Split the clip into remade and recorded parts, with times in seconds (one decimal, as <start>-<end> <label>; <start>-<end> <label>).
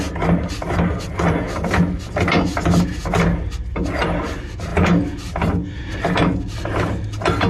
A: 0.0-7.5 recorded